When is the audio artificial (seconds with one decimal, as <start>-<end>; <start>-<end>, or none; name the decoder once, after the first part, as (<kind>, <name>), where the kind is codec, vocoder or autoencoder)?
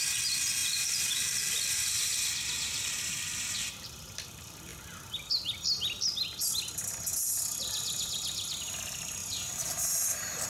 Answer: 0.6-3.9 (vocoder, BigVGAN v2); 9.2-10.5